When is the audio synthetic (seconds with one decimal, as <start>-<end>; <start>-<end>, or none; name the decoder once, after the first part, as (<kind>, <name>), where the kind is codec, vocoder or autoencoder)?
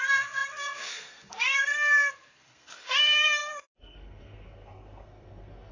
0.0-5.7 (codec, SNAC)